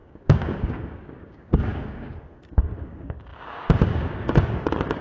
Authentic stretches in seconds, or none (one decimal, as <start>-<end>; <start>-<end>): none